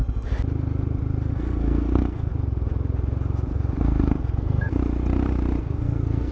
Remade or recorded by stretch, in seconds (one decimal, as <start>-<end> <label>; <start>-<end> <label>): 0.0-1.3 recorded; 1.3-2.3 remade; 2.3-3.8 recorded; 3.8-4.8 remade; 4.8-5.6 recorded; 5.6-6.3 remade